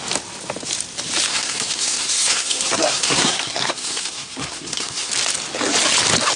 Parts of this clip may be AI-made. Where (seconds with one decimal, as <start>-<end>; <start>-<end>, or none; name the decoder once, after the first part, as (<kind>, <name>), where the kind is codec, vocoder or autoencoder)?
1.3-5.1 (codec, SNAC)